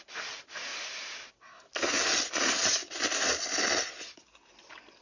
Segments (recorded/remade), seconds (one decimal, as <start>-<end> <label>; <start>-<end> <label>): 0.0-2.8 recorded; 2.8-3.4 remade; 3.4-5.0 recorded